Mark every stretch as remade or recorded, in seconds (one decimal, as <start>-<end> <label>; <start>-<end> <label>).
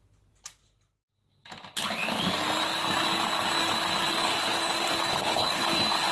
0.0-5.1 recorded; 5.1-5.6 remade; 5.6-6.1 recorded